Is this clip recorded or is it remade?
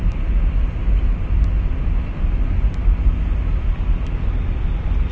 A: recorded